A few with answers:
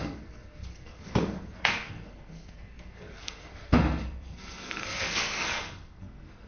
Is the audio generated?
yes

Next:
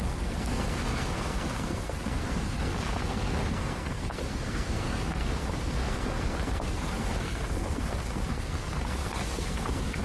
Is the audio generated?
yes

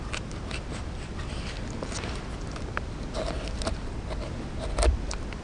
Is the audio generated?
no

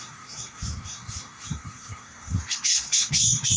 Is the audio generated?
yes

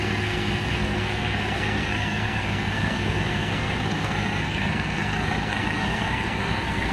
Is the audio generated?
yes